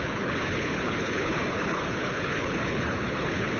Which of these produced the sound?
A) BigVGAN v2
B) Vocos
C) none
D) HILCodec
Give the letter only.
D